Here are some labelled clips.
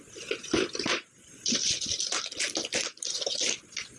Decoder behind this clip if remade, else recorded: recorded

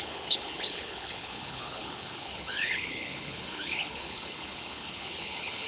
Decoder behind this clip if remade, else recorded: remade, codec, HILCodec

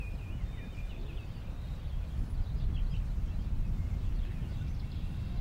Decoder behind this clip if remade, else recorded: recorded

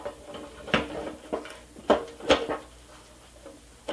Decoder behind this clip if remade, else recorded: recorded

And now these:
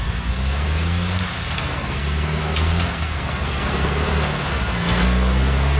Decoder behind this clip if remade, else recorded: remade, codec, SNAC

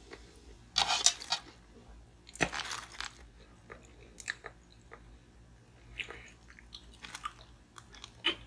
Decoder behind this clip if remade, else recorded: recorded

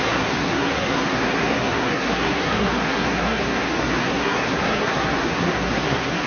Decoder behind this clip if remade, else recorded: remade, codec, SNAC